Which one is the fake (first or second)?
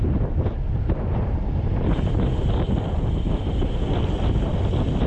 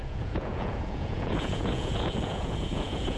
second